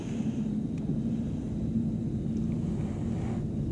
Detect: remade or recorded recorded